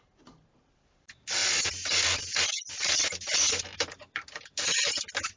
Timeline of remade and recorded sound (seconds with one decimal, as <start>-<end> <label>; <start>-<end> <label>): 0.0-5.4 recorded